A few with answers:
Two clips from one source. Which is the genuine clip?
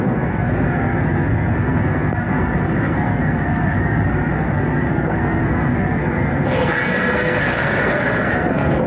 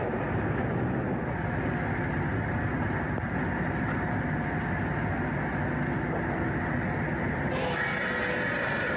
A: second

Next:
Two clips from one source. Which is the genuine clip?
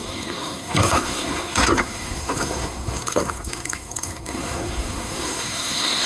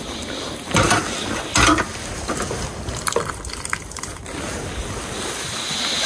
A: second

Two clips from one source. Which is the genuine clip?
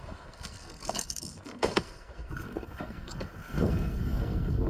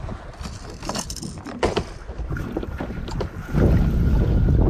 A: second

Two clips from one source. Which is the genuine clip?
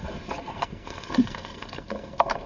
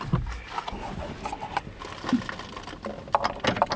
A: second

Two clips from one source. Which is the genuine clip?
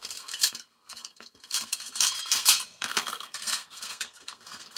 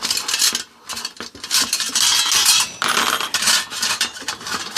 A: second